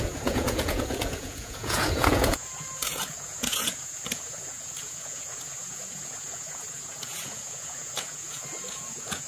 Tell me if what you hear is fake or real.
fake